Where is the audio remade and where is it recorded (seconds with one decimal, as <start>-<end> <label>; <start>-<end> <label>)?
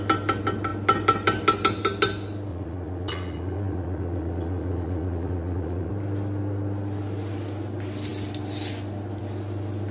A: 0.0-2.5 recorded; 2.5-5.9 remade; 5.9-9.9 recorded